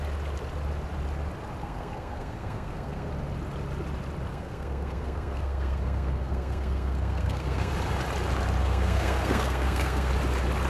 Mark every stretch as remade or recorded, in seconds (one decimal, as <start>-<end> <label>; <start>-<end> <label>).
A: 0.0-1.6 recorded; 1.6-3.1 remade; 3.1-4.3 recorded; 4.3-7.7 remade; 7.7-8.6 recorded; 8.6-10.1 remade; 10.1-10.7 recorded